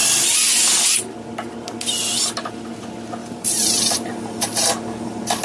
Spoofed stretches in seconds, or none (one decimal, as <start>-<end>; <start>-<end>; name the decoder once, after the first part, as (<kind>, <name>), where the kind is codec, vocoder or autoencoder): 3.2-4.7 (vocoder, BigVGAN v2)